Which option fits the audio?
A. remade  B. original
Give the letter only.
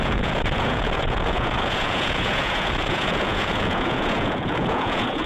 A